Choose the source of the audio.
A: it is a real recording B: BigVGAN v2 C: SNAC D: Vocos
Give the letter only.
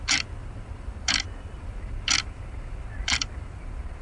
B